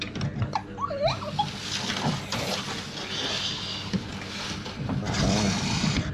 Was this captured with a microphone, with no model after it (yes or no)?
yes